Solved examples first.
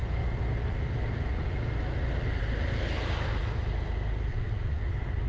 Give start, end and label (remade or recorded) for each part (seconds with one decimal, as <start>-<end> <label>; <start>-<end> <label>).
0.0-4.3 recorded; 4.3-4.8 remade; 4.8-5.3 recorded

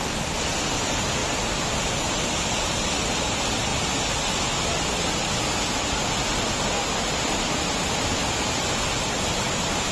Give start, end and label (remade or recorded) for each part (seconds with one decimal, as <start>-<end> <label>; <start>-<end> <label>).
0.0-9.9 recorded

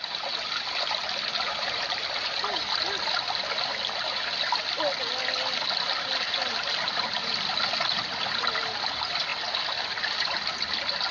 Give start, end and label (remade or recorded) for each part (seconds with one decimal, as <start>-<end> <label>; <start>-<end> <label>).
0.0-11.1 recorded

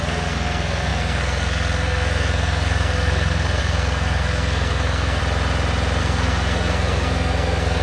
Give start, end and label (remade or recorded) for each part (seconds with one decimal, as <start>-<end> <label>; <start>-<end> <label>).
0.0-5.2 remade; 5.2-6.0 recorded; 6.0-7.8 remade

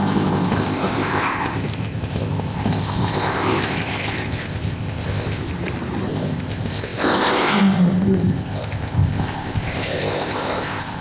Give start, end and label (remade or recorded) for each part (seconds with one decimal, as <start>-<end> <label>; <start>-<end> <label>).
0.0-5.5 remade; 5.5-6.1 recorded; 6.1-11.0 remade

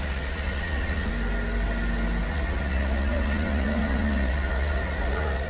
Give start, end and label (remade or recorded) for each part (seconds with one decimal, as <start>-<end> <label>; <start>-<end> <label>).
0.0-1.1 remade; 1.1-2.3 recorded; 2.3-5.5 remade

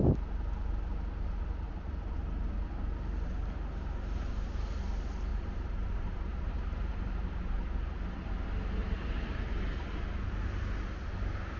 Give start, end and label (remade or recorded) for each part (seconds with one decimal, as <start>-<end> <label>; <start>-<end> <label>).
0.0-5.3 recorded; 5.3-8.3 remade; 8.3-8.8 recorded; 8.8-9.4 remade; 9.4-11.6 recorded